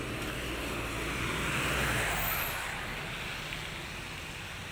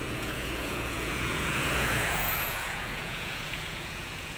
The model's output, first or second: second